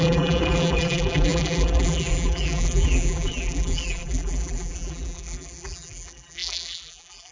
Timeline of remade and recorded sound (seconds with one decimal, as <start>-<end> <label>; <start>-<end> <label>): 0.0-7.3 remade